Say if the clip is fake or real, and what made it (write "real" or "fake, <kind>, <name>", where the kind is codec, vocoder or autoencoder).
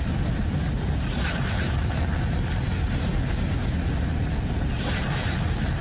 real